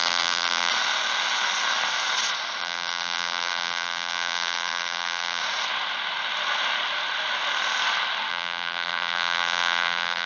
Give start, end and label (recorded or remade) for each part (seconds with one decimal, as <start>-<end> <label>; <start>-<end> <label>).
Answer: 0.0-0.7 remade; 0.7-2.6 recorded; 2.6-5.4 remade; 5.4-8.3 recorded; 8.3-10.3 remade